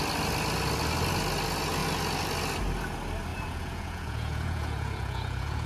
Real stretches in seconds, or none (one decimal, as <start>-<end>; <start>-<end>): 0.0-3.3